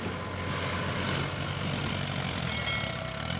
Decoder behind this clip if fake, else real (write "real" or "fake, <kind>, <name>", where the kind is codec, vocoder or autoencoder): real